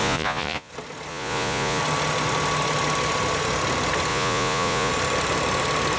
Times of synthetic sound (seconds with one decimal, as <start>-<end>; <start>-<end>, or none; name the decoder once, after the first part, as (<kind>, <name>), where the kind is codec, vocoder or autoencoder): 0.0-0.7 (vocoder, Vocos); 1.1-1.8; 4.1-4.9